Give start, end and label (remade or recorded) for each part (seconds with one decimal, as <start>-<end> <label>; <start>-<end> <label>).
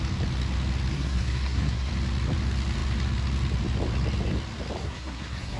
0.0-0.9 recorded; 0.9-1.9 remade; 1.9-4.8 recorded; 4.8-5.6 remade